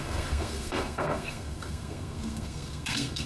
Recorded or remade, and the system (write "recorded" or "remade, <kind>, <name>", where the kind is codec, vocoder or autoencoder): remade, codec, SNAC